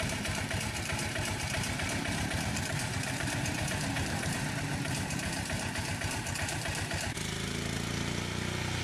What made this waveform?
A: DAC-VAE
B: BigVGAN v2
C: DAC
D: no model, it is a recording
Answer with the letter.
B